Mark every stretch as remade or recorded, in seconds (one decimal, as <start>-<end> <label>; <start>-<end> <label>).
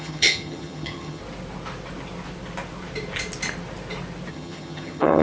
0.0-1.2 remade; 1.2-4.3 recorded; 4.3-5.2 remade